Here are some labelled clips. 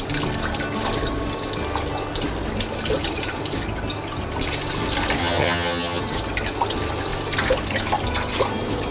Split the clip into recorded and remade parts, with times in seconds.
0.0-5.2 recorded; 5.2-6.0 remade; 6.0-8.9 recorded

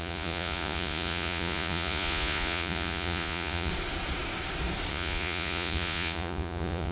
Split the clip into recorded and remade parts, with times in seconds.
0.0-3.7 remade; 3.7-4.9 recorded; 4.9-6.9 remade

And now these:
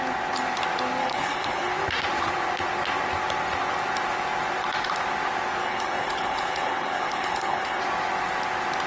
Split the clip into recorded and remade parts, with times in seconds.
0.0-1.0 recorded; 1.0-1.7 remade; 1.7-5.6 recorded; 5.6-7.8 remade; 7.8-8.9 recorded

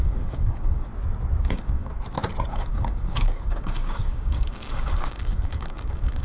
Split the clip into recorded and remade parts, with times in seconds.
0.0-0.9 remade; 0.9-1.4 recorded; 1.4-1.9 remade; 1.9-2.5 recorded; 2.5-6.2 remade

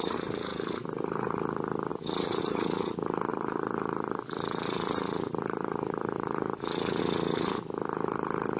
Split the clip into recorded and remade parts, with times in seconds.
0.0-1.9 recorded; 1.9-2.4 remade; 2.4-3.3 recorded; 3.3-7.0 remade; 7.0-8.6 recorded

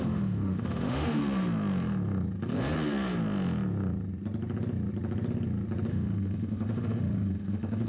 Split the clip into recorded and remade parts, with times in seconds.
0.0-1.2 remade; 1.2-5.9 recorded; 5.9-7.9 remade

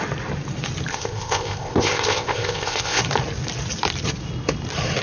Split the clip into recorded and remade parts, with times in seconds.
0.0-0.9 recorded; 0.9-3.0 remade; 3.0-5.0 recorded

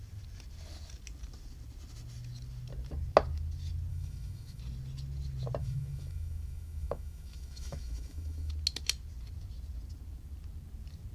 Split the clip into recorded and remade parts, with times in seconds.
0.0-3.9 recorded; 3.9-4.6 remade; 4.6-5.6 recorded; 5.6-8.5 remade; 8.5-11.1 recorded